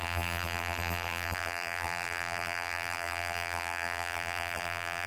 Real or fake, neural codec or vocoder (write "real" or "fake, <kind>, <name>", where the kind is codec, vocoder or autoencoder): fake, vocoder, BigVGAN v2